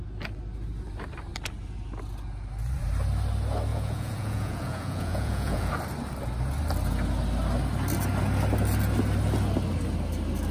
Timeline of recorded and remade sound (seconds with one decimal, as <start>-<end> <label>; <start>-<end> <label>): 0.0-3.7 recorded; 3.7-5.7 remade; 5.7-10.5 recorded